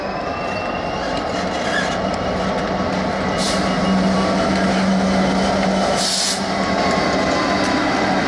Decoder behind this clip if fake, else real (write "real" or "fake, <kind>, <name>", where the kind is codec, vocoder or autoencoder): real